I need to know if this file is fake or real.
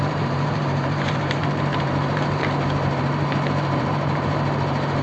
fake